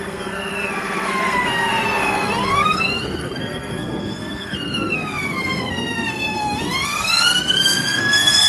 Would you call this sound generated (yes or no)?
yes